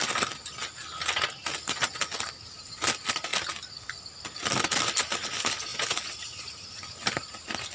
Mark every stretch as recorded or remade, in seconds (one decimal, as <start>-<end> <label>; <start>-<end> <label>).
0.0-7.7 recorded